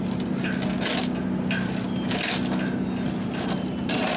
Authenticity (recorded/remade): recorded